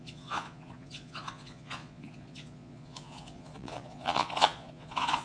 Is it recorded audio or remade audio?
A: remade